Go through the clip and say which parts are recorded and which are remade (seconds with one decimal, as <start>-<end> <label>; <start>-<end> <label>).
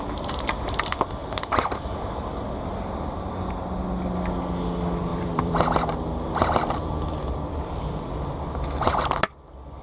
0.0-5.1 recorded; 5.1-9.0 remade; 9.0-9.8 recorded